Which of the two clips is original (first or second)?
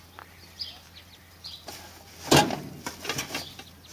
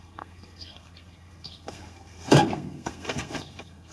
first